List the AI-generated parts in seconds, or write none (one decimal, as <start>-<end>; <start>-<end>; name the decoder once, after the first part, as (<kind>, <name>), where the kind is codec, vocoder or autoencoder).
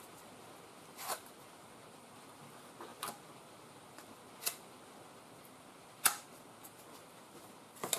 none